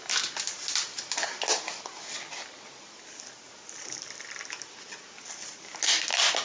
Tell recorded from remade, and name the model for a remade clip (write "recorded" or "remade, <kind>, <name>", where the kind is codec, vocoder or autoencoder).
recorded